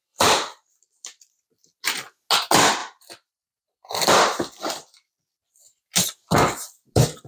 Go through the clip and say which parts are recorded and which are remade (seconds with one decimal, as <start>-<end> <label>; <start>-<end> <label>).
0.0-1.2 remade; 1.2-2.8 recorded; 2.8-5.5 remade; 5.5-7.3 recorded